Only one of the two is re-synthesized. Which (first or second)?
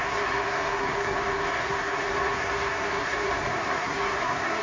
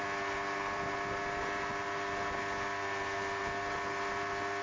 first